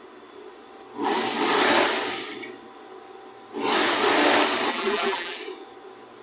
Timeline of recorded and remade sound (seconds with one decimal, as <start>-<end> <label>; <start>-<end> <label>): 0.0-4.7 recorded; 4.7-5.4 remade; 5.4-6.2 recorded